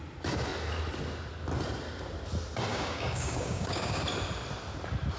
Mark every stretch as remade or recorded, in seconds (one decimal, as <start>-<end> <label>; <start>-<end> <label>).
0.0-2.7 recorded; 2.7-4.0 remade; 4.0-5.2 recorded